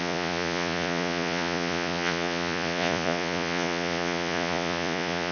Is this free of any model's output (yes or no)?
no